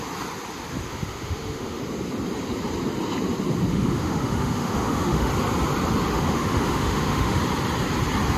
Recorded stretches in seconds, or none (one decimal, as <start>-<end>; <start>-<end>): 0.0-0.9; 1.8-3.7; 5.3-6.1; 7.4-8.4